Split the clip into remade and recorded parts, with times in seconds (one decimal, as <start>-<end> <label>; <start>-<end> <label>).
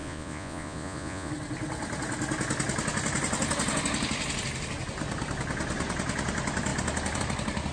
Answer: 0.0-1.3 remade; 1.3-7.7 recorded